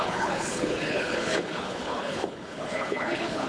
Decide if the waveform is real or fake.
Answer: fake